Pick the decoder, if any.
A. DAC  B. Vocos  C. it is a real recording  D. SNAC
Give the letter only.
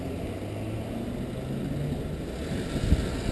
C